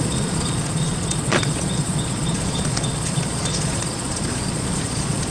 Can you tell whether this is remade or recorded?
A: remade